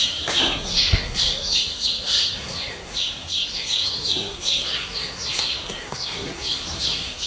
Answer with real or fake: fake